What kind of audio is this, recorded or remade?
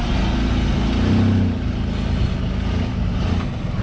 recorded